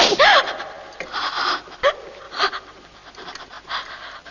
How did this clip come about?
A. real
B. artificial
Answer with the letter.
A